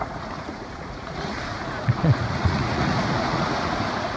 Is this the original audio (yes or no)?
no